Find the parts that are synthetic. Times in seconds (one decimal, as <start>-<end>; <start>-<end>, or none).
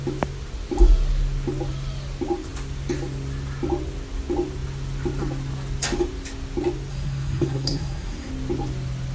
6.9-8.3